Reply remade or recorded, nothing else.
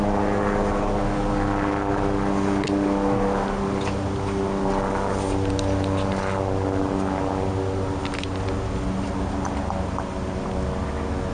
recorded